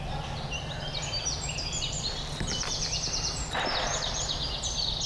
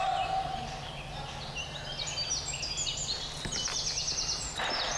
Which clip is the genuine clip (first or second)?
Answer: second